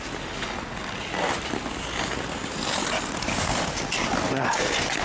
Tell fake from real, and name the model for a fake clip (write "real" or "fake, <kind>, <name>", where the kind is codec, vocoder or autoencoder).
real